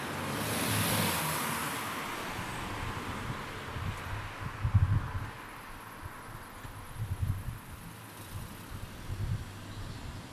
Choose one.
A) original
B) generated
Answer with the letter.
A